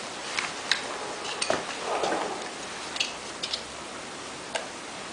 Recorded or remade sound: recorded